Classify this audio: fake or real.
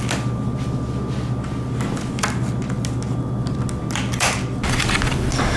real